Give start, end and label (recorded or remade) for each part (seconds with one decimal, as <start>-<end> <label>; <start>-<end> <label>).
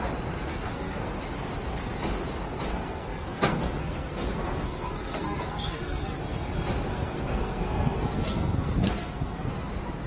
0.0-0.5 recorded; 0.5-1.1 remade; 1.1-2.7 recorded; 2.7-6.2 remade; 6.2-6.9 recorded; 6.9-9.5 remade; 9.5-10.1 recorded